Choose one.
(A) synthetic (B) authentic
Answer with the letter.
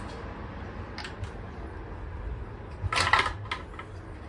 B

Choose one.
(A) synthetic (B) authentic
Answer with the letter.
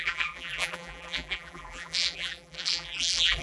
A